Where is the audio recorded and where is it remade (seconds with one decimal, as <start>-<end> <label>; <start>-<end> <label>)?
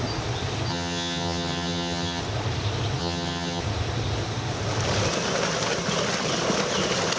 0.0-0.7 recorded; 0.7-2.2 remade; 2.2-3.0 recorded; 3.0-3.6 remade; 3.6-7.2 recorded